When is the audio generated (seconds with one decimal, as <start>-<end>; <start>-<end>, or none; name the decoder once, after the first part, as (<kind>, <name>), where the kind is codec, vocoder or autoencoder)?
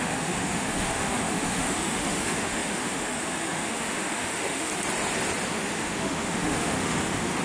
0.0-4.7 (autoencoder, DAC-VAE); 5.5-7.4